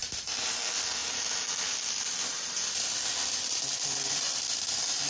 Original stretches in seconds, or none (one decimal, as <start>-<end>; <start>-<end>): 0.6-1.0; 4.1-5.1